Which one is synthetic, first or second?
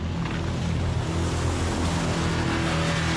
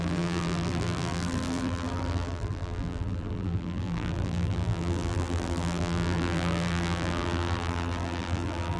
second